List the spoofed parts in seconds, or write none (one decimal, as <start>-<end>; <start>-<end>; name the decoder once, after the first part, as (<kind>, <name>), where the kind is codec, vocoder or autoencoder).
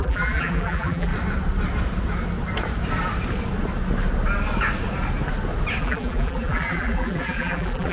0.0-1.1 (vocoder, BigVGAN v2); 5.8-7.9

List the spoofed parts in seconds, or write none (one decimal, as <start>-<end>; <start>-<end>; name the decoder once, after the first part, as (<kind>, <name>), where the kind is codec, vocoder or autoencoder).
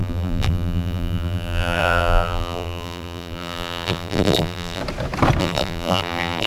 0.0-4.8 (vocoder, BigVGAN v2); 5.4-6.5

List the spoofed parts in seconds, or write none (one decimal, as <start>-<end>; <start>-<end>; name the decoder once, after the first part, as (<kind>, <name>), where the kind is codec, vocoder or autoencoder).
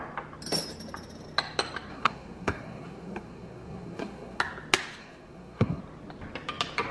1.9-4.4 (codec, SNAC); 5.0-5.8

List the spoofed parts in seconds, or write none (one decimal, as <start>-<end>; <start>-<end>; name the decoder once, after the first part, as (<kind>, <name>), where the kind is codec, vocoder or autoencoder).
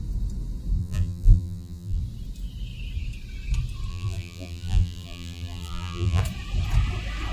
0.8-2.0 (vocoder, BigVGAN v2); 3.9-6.2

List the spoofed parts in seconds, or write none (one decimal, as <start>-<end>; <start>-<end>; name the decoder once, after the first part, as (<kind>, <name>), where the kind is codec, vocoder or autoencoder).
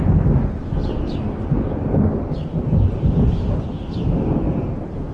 0.8-3.9 (vocoder, BigVGAN v2)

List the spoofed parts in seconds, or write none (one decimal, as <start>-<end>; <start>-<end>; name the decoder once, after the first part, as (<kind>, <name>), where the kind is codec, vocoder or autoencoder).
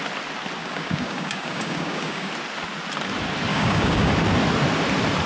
0.6-2.3 (codec, DAC); 3.5-4.1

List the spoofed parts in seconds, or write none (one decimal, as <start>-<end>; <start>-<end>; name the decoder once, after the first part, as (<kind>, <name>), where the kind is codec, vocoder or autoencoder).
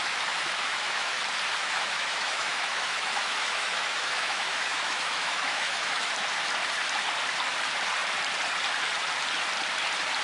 0.0-1.2 (autoencoder, DAC-VAE); 1.6-6.1